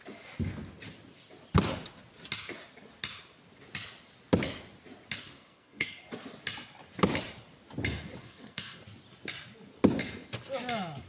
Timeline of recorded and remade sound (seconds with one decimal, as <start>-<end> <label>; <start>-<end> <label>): 0.0-5.2 recorded; 5.2-6.0 remade; 6.0-8.2 recorded; 8.2-8.8 remade; 8.8-11.1 recorded